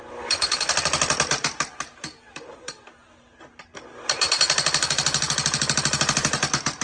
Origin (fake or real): real